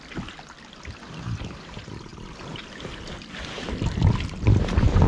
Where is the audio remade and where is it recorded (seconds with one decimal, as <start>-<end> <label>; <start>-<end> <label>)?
0.0-5.1 recorded